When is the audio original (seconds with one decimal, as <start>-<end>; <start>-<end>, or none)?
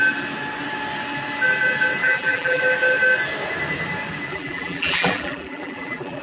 0.0-2.0; 2.6-4.3